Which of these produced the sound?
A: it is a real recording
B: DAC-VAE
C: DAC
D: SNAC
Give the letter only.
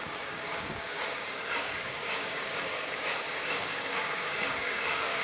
C